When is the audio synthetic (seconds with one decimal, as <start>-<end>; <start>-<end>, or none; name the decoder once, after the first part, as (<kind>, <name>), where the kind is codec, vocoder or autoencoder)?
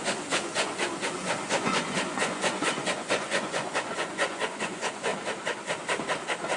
0.0-5.1 (vocoder, Vocos)